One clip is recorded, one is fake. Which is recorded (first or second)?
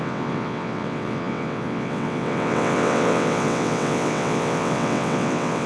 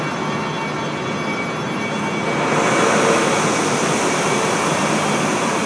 second